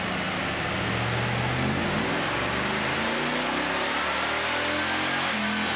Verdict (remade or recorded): recorded